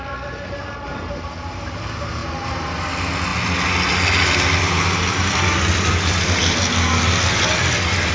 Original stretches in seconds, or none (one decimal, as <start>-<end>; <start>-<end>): 0.0-8.1